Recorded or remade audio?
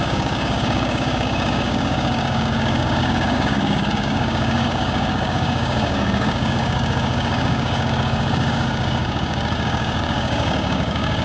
remade